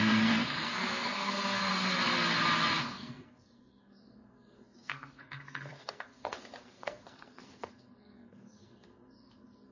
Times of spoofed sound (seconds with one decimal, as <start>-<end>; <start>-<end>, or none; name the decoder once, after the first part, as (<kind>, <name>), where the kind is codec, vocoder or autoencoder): 0.0-1.7 (codec, SNAC); 2.8-9.7